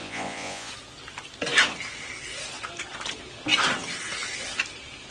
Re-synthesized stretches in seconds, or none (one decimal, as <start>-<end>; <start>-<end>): 0.0-0.7